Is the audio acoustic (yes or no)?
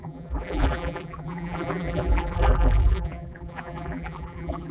no